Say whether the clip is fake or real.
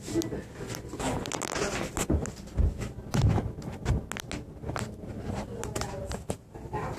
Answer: real